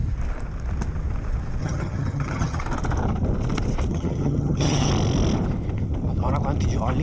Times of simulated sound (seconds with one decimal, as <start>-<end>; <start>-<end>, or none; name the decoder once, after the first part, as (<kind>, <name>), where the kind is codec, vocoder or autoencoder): 1.6-2.6 (vocoder, HiFi-GAN); 3.9-4.9